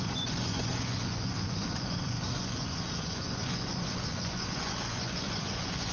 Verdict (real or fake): fake